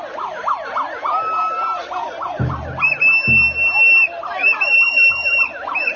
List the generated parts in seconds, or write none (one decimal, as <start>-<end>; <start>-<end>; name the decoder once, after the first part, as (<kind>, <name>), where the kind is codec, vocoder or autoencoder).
1.8-3.1 (vocoder, BigVGAN v2); 4.4-6.0